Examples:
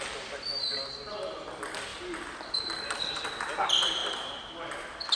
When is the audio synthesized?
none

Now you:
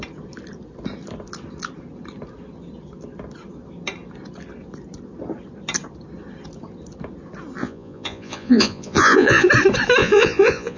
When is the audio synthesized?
7.6-9.5; 10.0-10.8

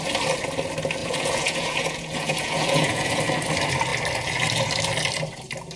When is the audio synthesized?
1.0-3.2

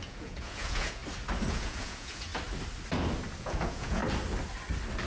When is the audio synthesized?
0.0-1.0; 1.5-2.3; 3.4-4.0